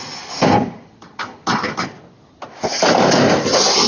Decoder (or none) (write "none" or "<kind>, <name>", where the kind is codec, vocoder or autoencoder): none